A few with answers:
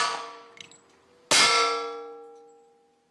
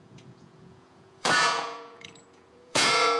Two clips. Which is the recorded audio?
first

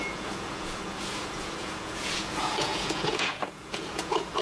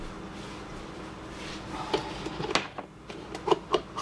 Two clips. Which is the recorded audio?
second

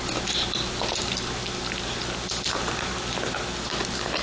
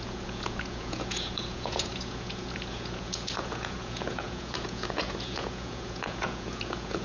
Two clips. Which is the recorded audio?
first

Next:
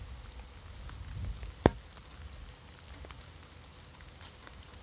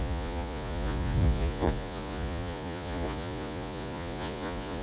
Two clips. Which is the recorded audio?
first